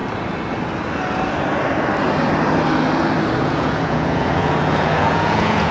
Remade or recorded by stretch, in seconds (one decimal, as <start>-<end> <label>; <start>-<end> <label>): 0.0-3.4 recorded; 3.4-5.7 remade